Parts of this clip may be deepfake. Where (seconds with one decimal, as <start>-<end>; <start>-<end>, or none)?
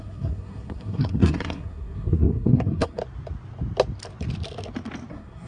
0.0-3.0; 5.1-5.5